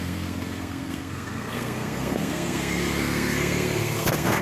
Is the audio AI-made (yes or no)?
yes